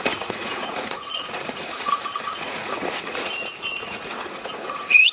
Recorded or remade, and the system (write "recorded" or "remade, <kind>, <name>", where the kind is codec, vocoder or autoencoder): remade, vocoder, Vocos